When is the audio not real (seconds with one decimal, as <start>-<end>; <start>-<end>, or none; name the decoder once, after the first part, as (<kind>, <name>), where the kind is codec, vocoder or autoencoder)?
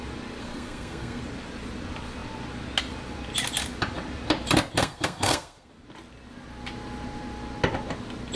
0.4-1.2 (codec, SNAC); 4.8-5.7